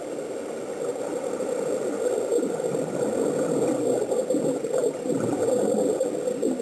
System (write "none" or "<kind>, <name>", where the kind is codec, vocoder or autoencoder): none